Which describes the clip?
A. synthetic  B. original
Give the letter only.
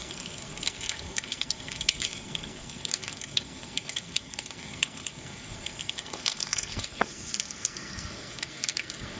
A